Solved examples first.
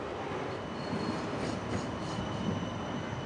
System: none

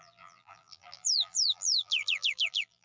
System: vocoder, BigVGAN v2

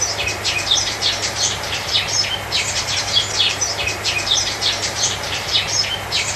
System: vocoder, BigVGAN v2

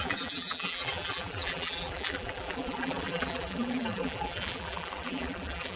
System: vocoder, BigVGAN v2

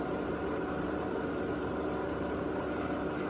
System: vocoder, BigVGAN v2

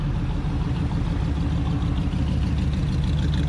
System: none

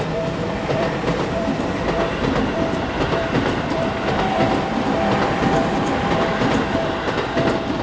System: vocoder, BigVGAN v2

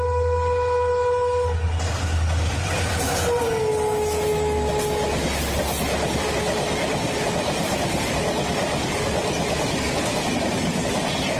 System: none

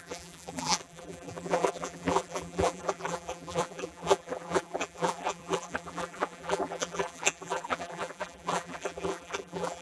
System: vocoder, BigVGAN v2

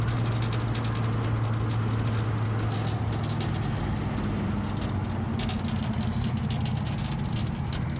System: none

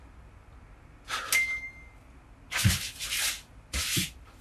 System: none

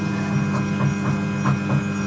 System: none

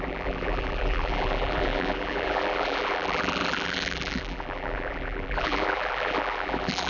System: vocoder, BigVGAN v2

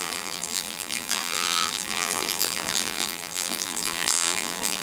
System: vocoder, BigVGAN v2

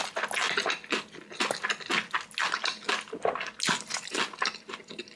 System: none